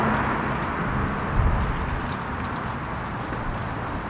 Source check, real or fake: real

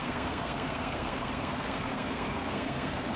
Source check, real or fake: fake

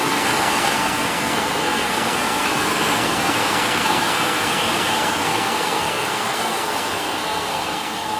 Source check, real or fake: fake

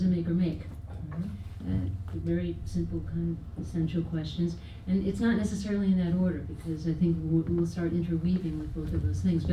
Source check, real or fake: real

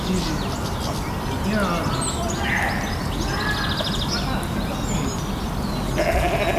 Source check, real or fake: real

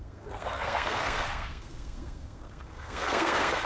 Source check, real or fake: fake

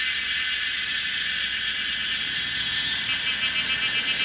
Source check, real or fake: real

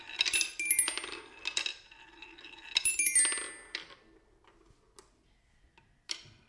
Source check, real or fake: real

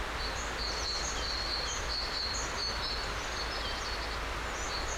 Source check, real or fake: real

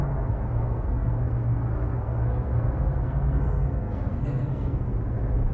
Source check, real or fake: fake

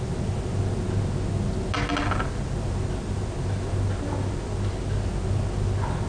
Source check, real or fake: real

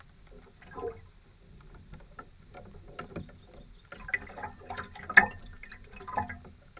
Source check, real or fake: real